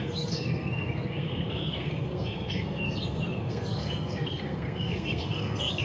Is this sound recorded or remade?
remade